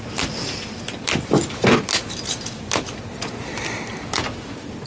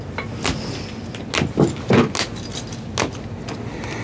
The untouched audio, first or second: second